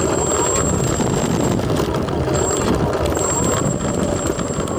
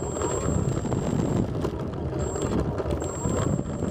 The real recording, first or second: second